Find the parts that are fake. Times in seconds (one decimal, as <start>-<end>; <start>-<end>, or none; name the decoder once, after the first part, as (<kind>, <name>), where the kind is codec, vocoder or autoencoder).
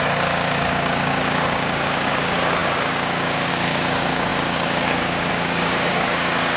0.0-6.6 (codec, DAC)